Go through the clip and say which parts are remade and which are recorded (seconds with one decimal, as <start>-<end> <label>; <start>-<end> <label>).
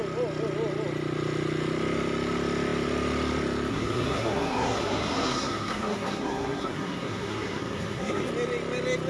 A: 0.0-3.7 recorded; 3.7-8.3 remade; 8.3-9.1 recorded